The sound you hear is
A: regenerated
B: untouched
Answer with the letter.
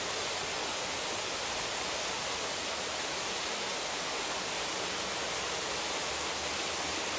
B